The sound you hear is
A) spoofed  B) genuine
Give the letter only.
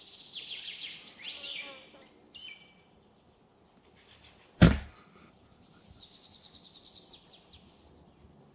B